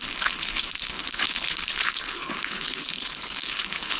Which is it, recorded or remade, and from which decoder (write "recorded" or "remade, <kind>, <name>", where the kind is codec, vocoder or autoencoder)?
remade, codec, HILCodec